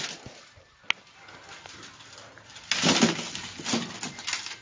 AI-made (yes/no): no